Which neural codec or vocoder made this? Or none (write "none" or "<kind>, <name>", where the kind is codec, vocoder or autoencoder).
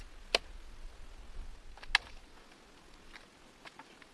none